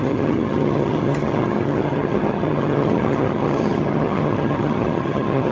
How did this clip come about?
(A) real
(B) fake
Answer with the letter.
B